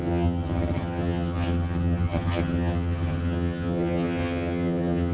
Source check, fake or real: fake